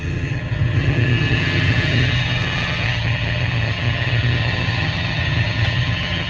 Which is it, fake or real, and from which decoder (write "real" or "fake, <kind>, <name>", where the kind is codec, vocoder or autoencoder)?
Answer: fake, vocoder, HiFi-GAN